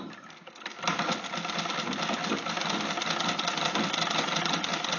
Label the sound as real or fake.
real